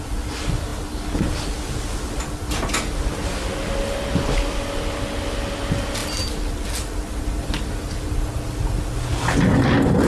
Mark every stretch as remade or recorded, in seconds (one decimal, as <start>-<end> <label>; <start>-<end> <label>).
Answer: 0.0-10.1 recorded